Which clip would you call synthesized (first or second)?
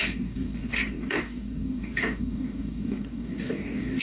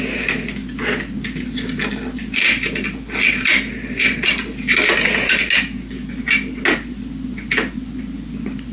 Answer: first